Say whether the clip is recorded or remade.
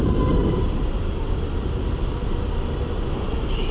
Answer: recorded